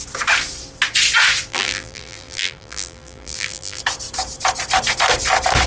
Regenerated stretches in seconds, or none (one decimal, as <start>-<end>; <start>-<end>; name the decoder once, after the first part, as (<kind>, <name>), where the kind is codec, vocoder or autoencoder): 1.5-3.8 (vocoder, BigVGAN v2)